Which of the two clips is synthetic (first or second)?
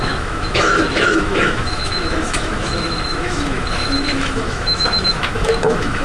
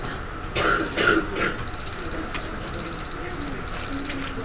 first